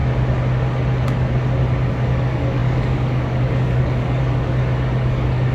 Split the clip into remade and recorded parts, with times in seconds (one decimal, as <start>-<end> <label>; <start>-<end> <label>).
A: 0.0-1.9 recorded; 1.9-5.5 remade